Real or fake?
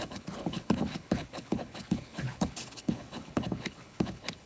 fake